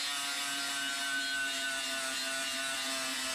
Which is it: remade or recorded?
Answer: recorded